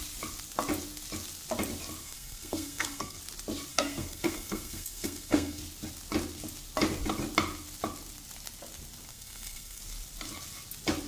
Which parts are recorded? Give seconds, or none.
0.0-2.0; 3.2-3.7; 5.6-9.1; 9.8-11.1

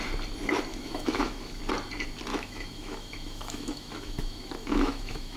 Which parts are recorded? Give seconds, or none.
0.0-0.7; 1.6-2.3

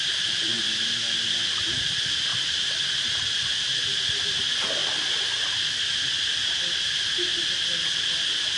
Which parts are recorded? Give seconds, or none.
0.0-8.6

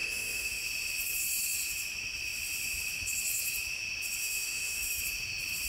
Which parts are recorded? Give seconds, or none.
0.6-4.2; 5.0-5.7

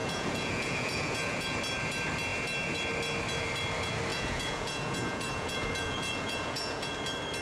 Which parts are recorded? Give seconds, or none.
1.6-4.1; 6.9-7.4

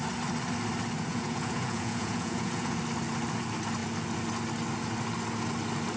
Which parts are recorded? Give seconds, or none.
0.0-1.1; 2.8-6.0

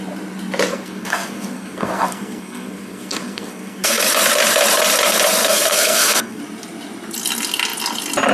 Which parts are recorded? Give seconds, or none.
0.0-0.7; 4.0-5.4; 6.4-8.3

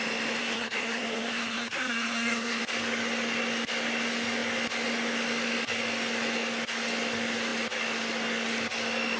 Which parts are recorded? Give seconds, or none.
0.0-0.4; 2.6-9.2